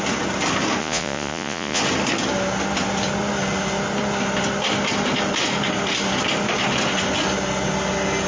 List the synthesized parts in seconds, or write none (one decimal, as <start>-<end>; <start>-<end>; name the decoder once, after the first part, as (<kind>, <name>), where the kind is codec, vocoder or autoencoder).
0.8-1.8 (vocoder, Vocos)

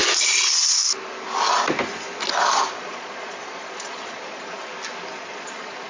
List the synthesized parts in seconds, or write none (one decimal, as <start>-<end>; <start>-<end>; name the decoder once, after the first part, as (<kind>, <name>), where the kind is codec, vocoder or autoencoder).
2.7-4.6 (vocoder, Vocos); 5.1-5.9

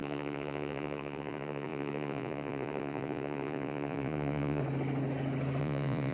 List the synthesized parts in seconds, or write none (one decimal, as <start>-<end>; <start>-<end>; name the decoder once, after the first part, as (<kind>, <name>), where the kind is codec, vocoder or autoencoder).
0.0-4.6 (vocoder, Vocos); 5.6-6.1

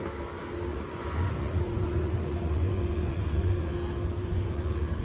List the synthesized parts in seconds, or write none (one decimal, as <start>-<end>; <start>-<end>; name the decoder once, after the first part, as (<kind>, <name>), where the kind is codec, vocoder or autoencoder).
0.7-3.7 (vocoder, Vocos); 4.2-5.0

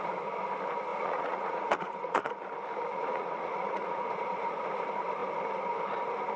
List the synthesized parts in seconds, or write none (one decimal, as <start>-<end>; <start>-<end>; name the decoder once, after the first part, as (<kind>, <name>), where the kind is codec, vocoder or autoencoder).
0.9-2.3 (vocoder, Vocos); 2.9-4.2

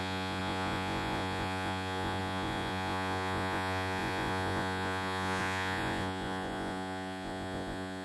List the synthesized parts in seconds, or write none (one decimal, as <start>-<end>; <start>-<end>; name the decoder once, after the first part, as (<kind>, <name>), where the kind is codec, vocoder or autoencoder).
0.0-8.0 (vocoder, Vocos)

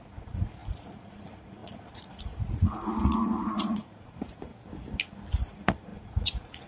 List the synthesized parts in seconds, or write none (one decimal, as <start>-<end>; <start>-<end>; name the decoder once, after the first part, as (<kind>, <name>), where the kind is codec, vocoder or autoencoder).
0.0-4.5 (vocoder, Vocos); 5.5-6.7